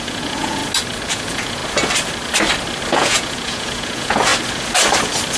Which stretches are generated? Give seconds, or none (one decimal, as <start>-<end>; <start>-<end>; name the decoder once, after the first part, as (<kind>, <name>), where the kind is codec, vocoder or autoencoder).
0.0-0.6 (vocoder, Vocos); 1.1-1.6; 2.9-4.3